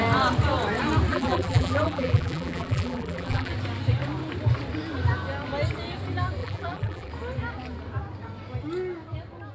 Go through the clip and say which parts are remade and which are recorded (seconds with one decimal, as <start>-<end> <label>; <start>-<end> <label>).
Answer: 0.0-1.1 recorded; 1.1-3.5 remade; 3.5-6.4 recorded; 6.4-7.1 remade; 7.1-9.5 recorded